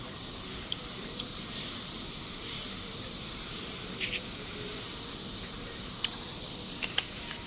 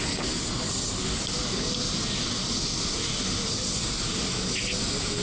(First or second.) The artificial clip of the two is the first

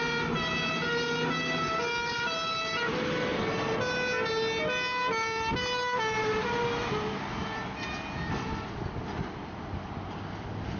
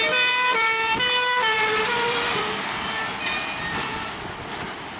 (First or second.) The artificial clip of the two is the second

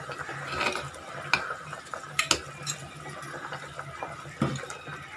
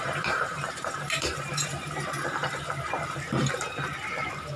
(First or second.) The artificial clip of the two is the second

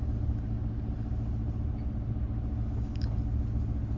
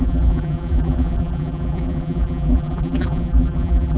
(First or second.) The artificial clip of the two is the second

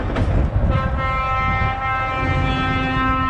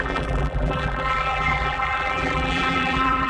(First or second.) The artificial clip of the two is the second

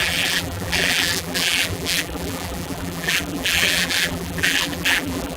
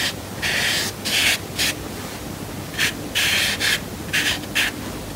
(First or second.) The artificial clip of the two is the first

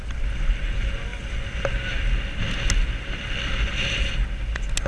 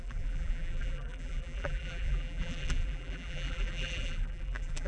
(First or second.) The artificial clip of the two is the second